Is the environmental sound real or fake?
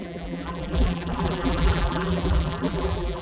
fake